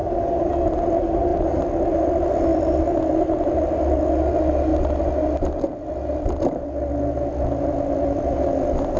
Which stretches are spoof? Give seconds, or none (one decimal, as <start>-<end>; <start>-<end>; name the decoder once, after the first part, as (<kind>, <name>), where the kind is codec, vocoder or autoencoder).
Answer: 0.0-0.5 (vocoder, BigVGAN v2)